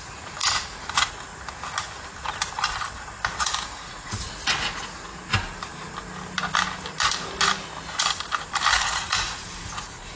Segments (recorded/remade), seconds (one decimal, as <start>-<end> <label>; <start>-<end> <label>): 0.0-0.4 remade; 0.4-0.9 recorded; 0.9-1.3 remade; 1.3-3.3 recorded; 3.3-5.1 remade; 5.1-8.8 recorded; 8.8-10.2 remade